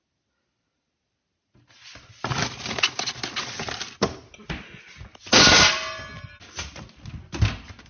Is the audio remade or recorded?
recorded